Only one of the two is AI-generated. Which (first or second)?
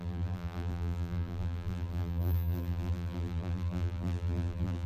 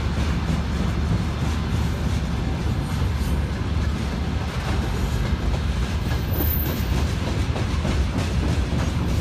first